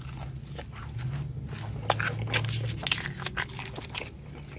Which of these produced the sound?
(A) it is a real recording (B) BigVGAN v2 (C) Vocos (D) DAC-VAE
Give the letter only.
A